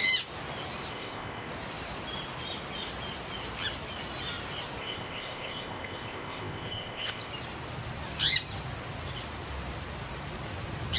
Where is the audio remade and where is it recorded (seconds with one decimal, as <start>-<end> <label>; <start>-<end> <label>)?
0.0-0.9 recorded; 0.9-1.5 remade; 1.5-4.8 recorded; 4.8-7.3 remade; 7.3-11.0 recorded